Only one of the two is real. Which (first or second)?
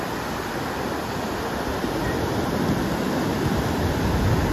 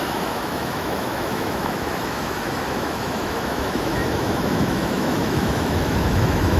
first